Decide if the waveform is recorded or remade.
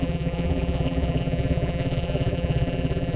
remade